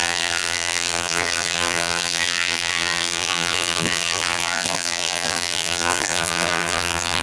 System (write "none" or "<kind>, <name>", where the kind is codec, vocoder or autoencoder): vocoder, BigVGAN v2